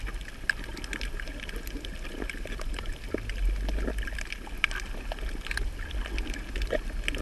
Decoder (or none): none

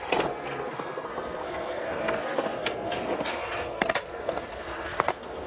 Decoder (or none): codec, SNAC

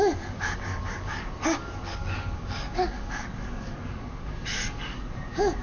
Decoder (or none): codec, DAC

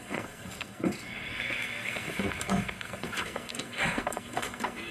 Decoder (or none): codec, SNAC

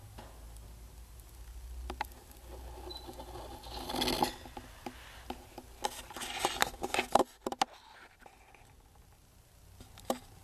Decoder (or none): none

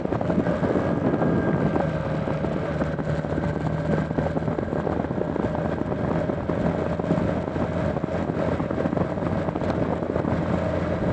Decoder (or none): none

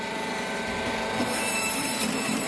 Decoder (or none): vocoder, BigVGAN v2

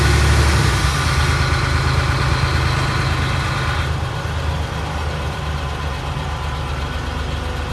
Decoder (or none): none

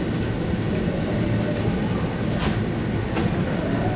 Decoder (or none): none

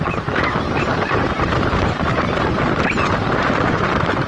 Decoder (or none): vocoder, BigVGAN v2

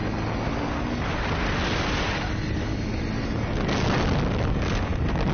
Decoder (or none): none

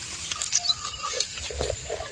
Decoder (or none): vocoder, BigVGAN v2